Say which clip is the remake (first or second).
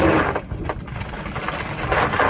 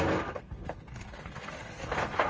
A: second